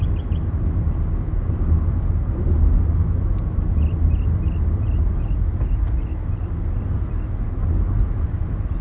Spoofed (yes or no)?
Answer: no